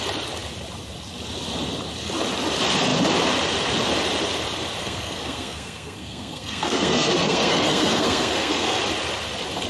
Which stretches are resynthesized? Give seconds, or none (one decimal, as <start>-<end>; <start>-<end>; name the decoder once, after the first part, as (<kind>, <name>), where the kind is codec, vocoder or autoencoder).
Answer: 4.8-8.8 (codec, SNAC)

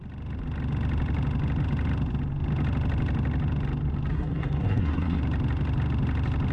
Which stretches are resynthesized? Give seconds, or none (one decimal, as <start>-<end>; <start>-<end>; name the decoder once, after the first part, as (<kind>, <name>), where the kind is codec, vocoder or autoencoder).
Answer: 4.1-5.2 (codec, SNAC)